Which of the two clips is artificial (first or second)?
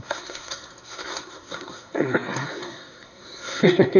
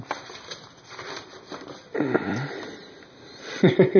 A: first